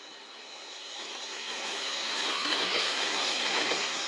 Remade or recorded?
remade